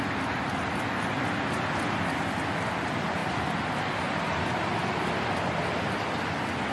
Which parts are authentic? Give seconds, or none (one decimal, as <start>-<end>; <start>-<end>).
0.0-6.7